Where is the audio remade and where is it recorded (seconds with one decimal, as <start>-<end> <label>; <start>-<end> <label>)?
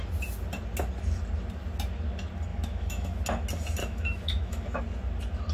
0.0-2.5 recorded; 2.5-3.2 remade; 3.2-3.8 recorded; 3.8-4.8 remade; 4.8-5.5 recorded